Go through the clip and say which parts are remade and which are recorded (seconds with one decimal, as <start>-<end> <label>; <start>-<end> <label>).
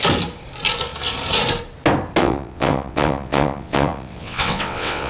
0.0-2.2 recorded; 2.2-5.1 remade